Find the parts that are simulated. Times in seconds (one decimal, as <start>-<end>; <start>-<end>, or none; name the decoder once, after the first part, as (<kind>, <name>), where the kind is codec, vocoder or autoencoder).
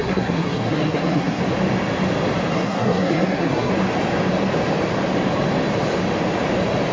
0.0-1.4 (codec, SNAC); 2.5-3.7